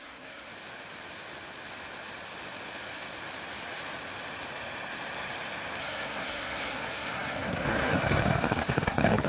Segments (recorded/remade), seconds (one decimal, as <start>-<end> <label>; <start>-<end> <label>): 0.0-0.5 remade; 0.5-5.8 recorded; 5.8-9.3 remade